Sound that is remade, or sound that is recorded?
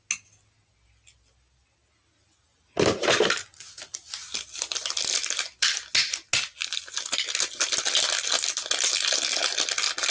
recorded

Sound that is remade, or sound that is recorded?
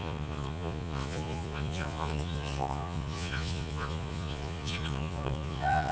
remade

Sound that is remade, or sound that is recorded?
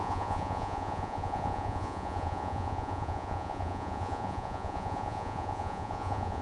remade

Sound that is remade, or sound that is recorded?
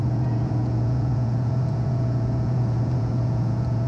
remade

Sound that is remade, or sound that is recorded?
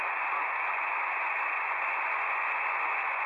remade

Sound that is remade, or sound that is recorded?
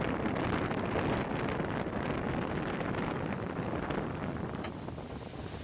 recorded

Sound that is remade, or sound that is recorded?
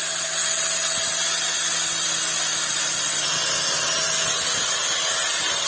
recorded